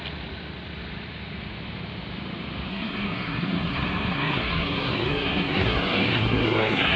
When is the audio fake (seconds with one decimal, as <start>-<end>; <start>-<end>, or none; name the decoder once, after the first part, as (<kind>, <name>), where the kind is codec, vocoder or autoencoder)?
2.7-7.0 (codec, SNAC)